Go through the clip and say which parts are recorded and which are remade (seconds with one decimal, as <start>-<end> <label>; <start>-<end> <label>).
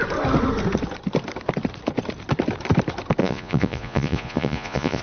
0.0-3.2 recorded; 3.2-5.0 remade